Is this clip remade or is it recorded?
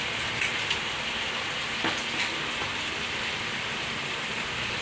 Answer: recorded